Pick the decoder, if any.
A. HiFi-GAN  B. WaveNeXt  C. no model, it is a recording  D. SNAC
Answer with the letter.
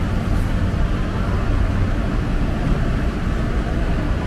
C